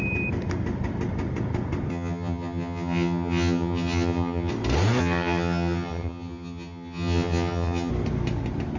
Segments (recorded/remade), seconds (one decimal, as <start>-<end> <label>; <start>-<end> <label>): 0.0-1.9 recorded; 1.9-4.5 remade; 4.5-5.0 recorded; 5.0-7.9 remade; 7.9-8.8 recorded